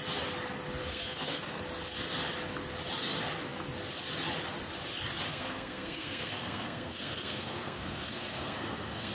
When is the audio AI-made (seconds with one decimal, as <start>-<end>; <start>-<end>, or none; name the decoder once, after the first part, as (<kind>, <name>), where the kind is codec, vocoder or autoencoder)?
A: 0.8-1.6 (codec, SNAC); 5.3-9.1

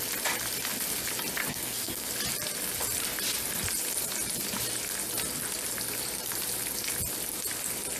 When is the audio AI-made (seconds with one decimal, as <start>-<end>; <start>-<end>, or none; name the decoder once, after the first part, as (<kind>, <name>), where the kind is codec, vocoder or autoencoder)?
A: 1.5-2.1 (codec, SNAC)

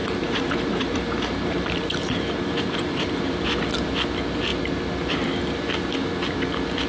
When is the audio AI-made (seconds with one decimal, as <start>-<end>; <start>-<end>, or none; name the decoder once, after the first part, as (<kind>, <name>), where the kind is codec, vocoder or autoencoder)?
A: 0.0-3.6 (vocoder, BigVGAN v2)

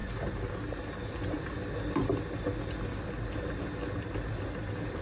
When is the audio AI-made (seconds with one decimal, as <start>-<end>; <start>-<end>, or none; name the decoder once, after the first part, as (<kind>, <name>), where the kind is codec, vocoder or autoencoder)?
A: none

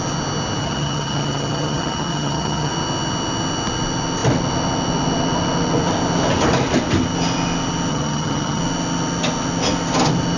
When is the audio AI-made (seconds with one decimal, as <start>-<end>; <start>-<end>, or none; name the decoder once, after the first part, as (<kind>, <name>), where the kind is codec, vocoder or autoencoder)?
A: 0.6-2.7 (vocoder, HiFi-GAN); 7.9-8.6

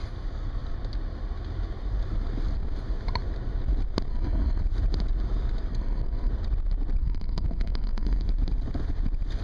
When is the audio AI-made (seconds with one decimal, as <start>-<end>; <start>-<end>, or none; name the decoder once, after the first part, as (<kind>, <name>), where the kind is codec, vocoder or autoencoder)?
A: 4.1-4.6 (codec, SNAC); 5.7-6.3; 7.0-8.2